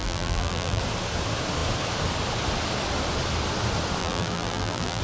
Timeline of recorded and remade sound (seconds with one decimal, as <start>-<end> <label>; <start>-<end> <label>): 0.0-0.8 remade; 0.8-4.0 recorded; 4.0-5.0 remade